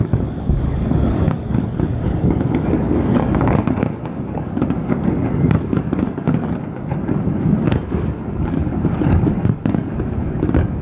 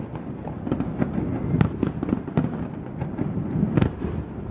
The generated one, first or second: first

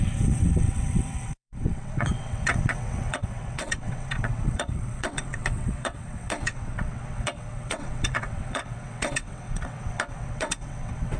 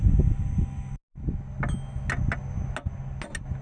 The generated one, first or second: first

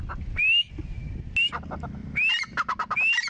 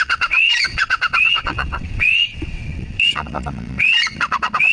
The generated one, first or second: second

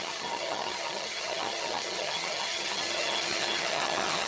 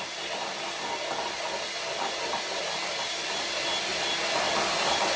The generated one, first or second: first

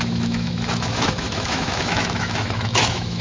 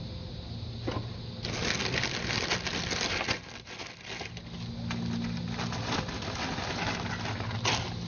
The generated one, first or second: first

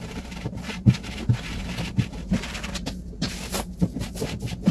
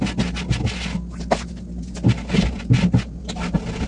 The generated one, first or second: first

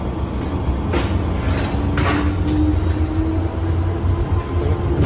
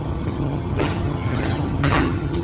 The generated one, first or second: second